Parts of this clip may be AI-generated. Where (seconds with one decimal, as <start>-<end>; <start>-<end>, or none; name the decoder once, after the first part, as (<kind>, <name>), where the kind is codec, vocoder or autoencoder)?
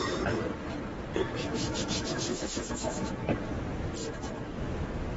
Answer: 1.5-3.1 (autoencoder, DAC-VAE)